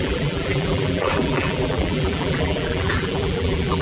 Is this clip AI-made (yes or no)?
yes